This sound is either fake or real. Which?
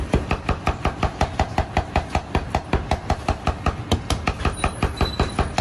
real